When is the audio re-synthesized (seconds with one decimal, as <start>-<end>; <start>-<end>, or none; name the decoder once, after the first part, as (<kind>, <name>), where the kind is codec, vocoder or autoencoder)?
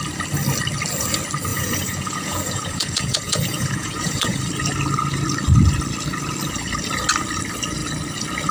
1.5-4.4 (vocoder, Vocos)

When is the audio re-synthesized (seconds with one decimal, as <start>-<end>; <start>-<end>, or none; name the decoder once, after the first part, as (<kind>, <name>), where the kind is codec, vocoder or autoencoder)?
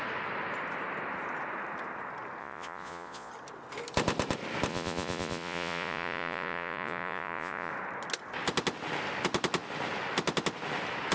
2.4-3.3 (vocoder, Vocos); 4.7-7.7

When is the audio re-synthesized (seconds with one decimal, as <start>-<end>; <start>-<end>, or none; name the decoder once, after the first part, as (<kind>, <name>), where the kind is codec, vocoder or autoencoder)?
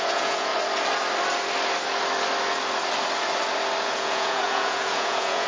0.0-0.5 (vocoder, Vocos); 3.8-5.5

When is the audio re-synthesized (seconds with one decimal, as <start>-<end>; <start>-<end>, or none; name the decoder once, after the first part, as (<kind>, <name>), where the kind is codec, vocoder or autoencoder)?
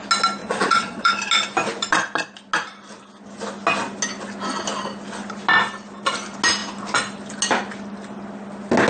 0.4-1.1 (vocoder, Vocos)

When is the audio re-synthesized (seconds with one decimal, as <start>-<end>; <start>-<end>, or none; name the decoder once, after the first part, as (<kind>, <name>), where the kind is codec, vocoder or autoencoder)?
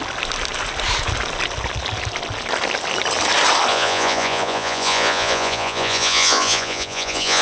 3.7-7.4 (vocoder, Vocos)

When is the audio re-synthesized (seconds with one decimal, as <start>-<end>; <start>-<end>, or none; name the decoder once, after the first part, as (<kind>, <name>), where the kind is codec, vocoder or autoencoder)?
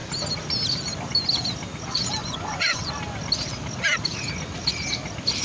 2.2-2.9 (vocoder, Vocos)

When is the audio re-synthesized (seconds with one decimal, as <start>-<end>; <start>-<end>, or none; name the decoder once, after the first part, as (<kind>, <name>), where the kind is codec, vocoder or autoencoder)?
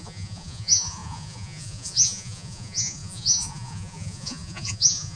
0.0-5.2 (vocoder, Vocos)